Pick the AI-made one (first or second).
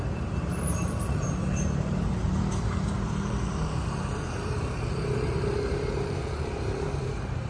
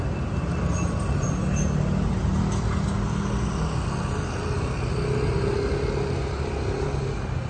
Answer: first